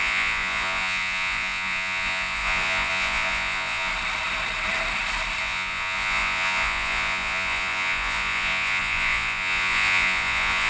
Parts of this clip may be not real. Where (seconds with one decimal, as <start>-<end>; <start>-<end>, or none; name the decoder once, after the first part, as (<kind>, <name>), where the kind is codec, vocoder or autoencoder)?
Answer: 0.0-3.9 (vocoder, Vocos); 5.4-10.7